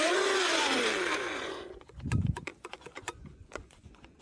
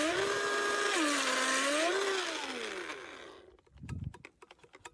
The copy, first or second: first